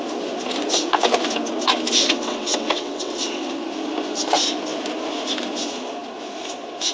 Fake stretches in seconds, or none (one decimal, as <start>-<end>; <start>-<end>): 2.0-3.4